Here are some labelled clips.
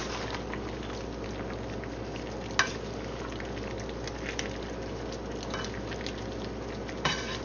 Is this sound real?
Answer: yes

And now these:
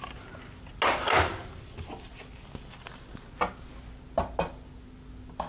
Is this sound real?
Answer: yes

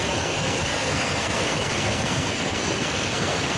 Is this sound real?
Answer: no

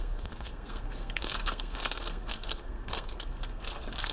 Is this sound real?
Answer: no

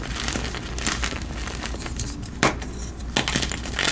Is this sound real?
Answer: yes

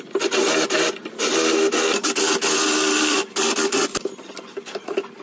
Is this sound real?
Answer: yes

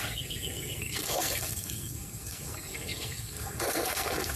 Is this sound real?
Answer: no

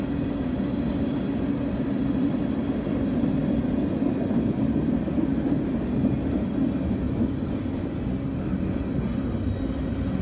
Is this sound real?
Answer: yes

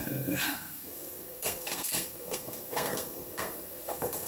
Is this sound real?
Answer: no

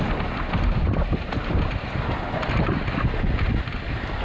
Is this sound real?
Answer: yes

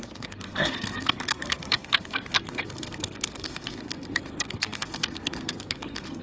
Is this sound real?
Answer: no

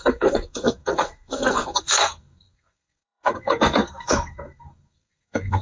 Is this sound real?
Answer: no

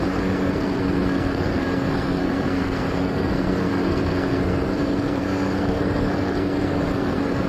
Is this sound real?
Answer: no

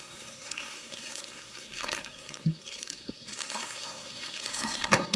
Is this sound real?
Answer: no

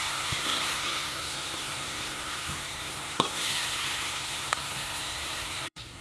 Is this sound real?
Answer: no